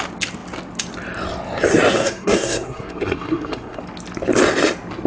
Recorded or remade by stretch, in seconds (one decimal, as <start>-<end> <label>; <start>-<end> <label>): 0.0-1.7 recorded; 1.7-3.8 remade; 3.8-5.1 recorded